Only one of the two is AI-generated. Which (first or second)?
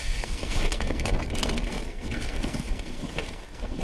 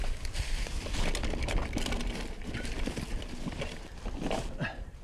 first